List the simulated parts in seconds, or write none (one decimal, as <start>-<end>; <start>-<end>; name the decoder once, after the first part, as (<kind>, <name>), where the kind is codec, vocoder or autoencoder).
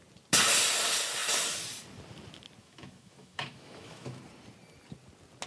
2.6-4.2 (autoencoder, DAC-VAE)